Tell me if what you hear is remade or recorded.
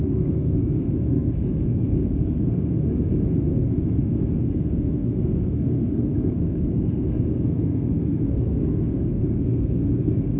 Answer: remade